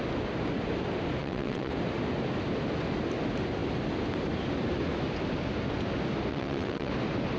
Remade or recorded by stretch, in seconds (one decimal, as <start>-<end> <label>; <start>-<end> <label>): 0.0-1.2 recorded; 1.2-1.7 remade; 1.7-6.3 recorded; 6.3-6.9 remade; 6.9-7.4 recorded